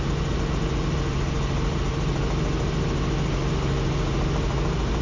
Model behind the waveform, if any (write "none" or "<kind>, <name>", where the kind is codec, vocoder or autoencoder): none